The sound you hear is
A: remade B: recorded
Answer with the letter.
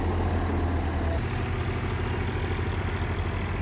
B